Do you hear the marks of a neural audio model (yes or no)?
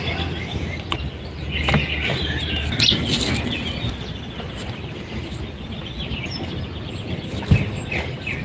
no